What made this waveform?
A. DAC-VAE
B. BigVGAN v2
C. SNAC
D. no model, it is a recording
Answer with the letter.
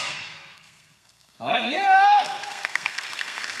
C